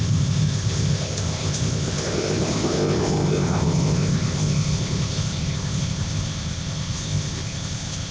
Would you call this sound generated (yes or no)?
yes